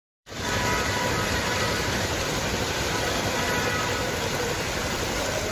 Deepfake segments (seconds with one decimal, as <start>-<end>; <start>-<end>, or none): 0.0-3.3